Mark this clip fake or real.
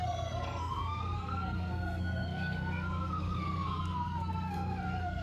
fake